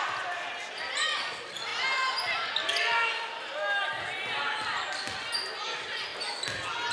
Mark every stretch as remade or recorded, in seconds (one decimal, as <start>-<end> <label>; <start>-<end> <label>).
0.0-6.9 recorded